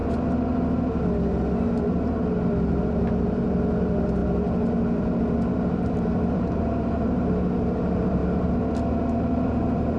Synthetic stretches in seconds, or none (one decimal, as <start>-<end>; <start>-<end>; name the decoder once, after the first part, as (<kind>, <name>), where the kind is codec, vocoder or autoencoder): 2.8-8.2 (vocoder, BigVGAN v2); 9.0-10.0